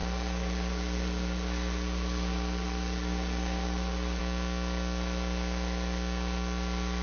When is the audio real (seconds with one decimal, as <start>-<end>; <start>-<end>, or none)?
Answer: 4.2-7.0